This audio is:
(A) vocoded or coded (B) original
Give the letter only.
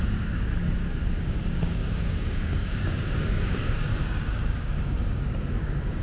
A